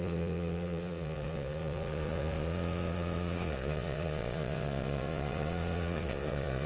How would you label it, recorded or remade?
remade